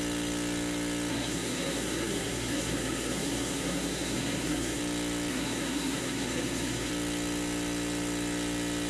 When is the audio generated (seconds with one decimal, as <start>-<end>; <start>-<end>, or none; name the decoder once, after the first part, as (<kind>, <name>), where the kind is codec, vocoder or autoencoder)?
1.1-4.8 (codec, SNAC); 5.3-6.9

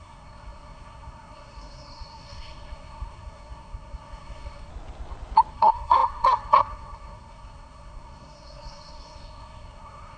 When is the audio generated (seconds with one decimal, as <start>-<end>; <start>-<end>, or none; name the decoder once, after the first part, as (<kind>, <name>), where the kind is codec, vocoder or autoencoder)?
0.0-4.7 (codec, SNAC); 5.5-10.2

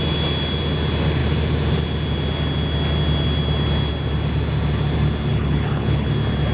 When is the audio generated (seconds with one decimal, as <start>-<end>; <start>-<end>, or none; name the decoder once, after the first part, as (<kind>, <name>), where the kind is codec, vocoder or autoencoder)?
5.3-6.1 (codec, HILCodec)

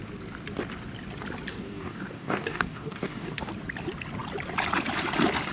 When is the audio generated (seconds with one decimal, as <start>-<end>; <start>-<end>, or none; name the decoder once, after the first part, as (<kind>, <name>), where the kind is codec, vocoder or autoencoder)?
1.5-3.5 (codec, DAC)

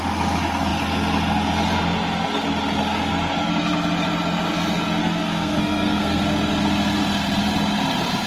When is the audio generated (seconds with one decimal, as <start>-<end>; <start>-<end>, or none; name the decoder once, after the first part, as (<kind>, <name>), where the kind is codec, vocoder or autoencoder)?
5.0-6.2 (codec, SNAC)

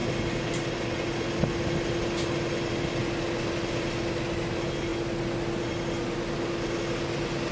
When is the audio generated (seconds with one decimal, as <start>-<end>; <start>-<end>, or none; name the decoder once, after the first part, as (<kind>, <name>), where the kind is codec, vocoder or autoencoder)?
none